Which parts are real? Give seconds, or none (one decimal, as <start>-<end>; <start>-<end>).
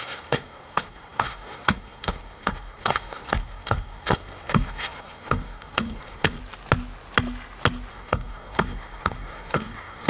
6.4-7.9